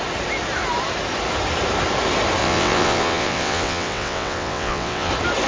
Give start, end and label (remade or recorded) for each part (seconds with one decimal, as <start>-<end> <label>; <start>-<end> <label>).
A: 0.0-2.4 recorded; 2.4-5.1 remade; 5.1-5.5 recorded